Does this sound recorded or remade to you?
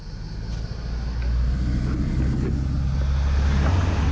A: recorded